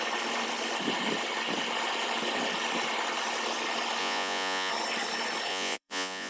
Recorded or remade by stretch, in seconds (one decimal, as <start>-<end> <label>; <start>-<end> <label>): 0.0-4.0 recorded; 4.0-4.7 remade; 4.7-5.5 recorded; 5.5-6.3 remade